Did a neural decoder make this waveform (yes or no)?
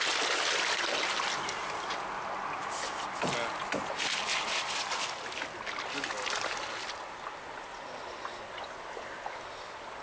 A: no